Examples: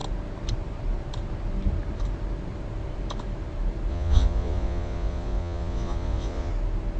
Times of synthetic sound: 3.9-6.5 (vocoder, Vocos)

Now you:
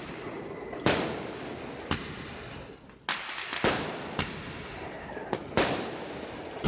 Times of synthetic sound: none